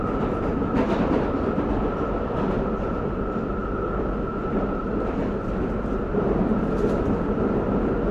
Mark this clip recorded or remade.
recorded